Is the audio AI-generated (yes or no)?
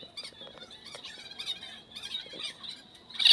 no